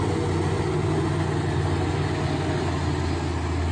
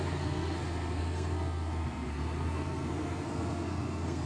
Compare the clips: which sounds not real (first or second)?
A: second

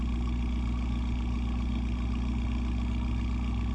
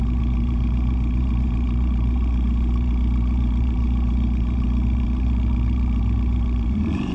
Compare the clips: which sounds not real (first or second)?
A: second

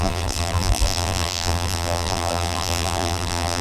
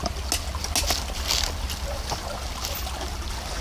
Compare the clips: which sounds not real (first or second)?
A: first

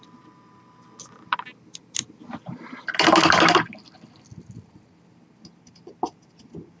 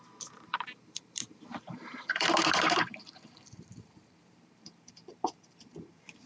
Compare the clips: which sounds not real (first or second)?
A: second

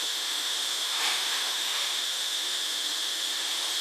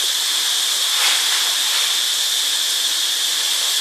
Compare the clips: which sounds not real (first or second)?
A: first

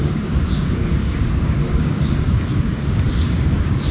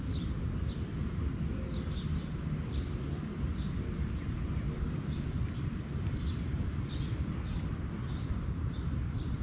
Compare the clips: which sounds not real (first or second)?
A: first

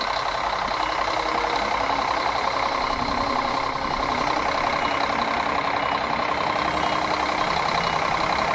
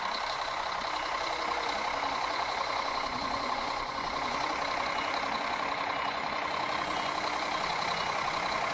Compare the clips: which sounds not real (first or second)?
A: second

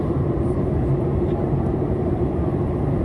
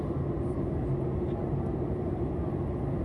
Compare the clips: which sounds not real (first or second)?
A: first